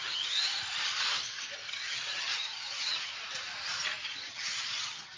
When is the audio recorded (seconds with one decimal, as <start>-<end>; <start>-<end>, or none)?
0.5-1.9; 3.1-4.3